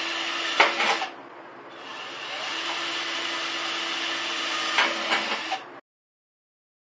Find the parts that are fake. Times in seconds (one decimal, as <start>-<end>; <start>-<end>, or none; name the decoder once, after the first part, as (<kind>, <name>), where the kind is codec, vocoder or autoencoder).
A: 0.0-1.9 (vocoder, BigVGAN v2); 6.0-6.9